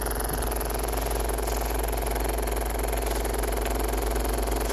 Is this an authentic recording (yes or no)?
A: yes